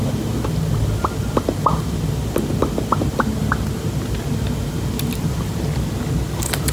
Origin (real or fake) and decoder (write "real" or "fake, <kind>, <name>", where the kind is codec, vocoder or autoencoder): real